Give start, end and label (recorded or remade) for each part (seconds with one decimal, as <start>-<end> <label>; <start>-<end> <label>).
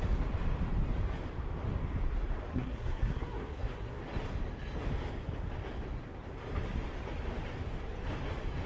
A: 0.0-2.5 recorded; 2.5-4.0 remade; 4.0-8.7 recorded